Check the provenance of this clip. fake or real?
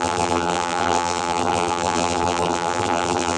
fake